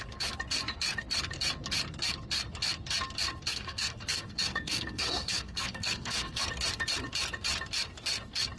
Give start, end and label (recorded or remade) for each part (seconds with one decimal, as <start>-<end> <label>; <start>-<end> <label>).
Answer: 0.0-3.5 recorded; 3.5-6.5 remade; 6.5-8.6 recorded